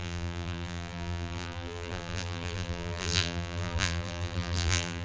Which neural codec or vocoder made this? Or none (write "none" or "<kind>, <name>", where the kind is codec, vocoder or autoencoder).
vocoder, BigVGAN v2